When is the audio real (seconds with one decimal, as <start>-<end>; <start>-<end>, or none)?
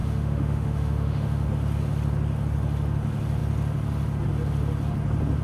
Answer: 1.5-5.4